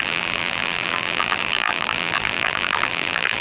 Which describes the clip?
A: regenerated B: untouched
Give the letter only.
A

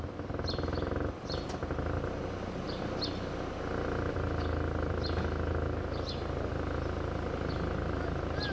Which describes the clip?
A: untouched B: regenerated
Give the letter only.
A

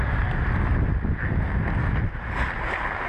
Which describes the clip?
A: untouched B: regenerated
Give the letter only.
A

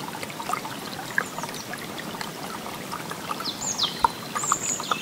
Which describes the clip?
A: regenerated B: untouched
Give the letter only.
B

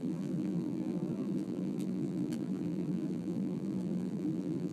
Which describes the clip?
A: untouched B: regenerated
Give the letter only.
B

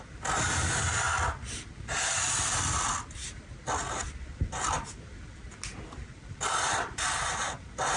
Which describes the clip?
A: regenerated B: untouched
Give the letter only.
B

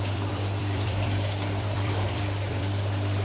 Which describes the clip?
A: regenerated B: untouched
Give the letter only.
A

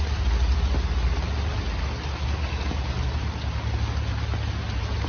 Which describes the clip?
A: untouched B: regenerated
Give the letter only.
A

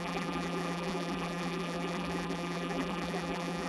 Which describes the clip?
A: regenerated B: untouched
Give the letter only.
A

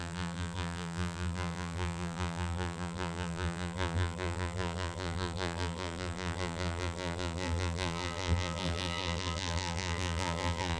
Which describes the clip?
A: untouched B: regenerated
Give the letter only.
B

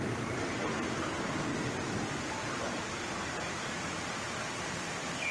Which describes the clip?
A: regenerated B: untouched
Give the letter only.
A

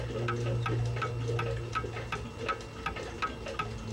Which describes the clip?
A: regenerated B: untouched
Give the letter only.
B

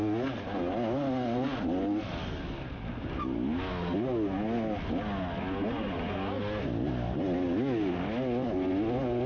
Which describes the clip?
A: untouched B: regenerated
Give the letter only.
A